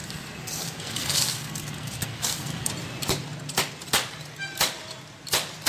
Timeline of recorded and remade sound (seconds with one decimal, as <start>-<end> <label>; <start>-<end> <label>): 0.0-2.7 remade; 2.7-5.7 recorded